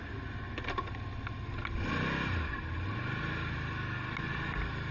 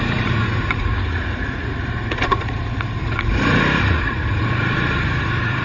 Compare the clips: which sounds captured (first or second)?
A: first